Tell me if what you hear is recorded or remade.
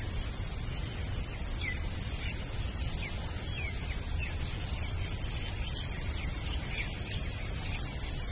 recorded